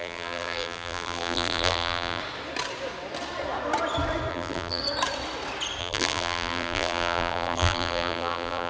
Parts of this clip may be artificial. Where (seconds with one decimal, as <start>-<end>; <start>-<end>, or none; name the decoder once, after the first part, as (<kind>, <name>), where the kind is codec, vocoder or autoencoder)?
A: 0.0-2.2 (vocoder, BigVGAN v2); 4.3-4.8; 5.8-8.7